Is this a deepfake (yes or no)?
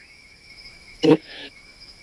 yes